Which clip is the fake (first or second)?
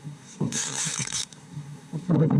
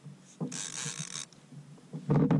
first